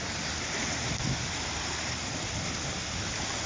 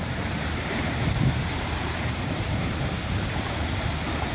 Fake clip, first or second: second